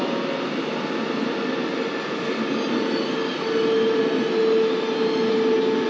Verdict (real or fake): real